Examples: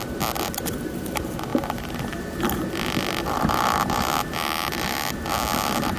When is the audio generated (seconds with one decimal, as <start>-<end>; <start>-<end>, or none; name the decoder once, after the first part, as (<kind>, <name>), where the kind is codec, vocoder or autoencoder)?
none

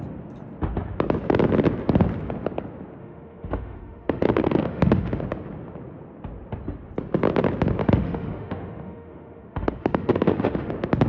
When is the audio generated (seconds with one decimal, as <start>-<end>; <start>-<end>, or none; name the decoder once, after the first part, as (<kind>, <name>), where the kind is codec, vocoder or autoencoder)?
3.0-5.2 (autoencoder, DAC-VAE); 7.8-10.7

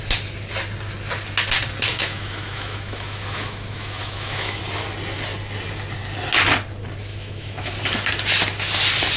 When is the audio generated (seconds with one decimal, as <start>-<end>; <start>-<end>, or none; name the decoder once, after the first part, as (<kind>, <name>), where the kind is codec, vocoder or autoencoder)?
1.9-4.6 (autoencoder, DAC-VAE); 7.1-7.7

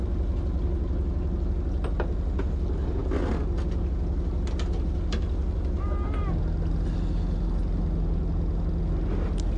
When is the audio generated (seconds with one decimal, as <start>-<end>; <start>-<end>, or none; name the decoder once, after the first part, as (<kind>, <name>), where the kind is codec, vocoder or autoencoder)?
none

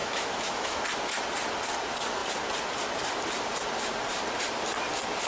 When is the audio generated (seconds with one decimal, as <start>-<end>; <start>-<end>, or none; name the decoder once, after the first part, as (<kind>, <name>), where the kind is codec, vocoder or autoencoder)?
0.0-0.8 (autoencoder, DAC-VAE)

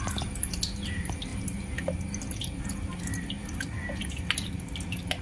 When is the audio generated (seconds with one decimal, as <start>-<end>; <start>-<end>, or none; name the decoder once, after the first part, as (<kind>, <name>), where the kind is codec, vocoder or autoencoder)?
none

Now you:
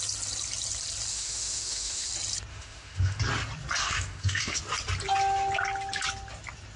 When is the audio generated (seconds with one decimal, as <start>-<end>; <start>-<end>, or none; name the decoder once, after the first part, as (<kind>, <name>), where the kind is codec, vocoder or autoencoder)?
1.1-2.1 (autoencoder, DAC-VAE); 2.5-3.2; 3.8-4.6